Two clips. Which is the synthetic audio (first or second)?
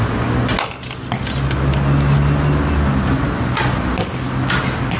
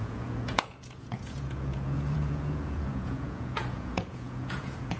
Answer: second